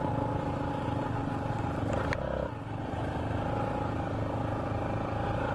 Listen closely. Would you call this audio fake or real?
real